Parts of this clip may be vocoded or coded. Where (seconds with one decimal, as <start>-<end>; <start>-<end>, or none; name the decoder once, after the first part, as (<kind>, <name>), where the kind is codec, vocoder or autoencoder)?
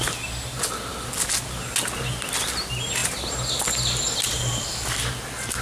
none